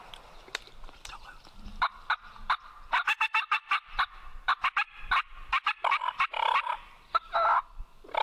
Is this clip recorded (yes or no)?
no